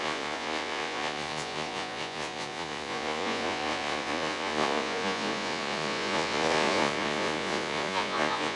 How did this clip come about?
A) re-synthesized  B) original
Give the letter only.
A